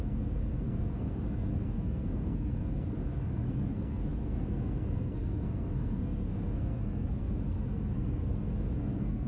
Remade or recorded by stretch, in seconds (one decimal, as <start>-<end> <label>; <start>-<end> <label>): 0.0-9.3 remade